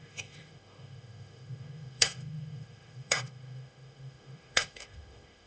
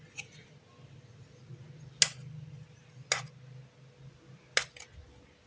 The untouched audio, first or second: second